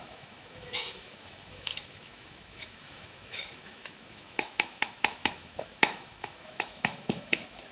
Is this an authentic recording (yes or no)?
no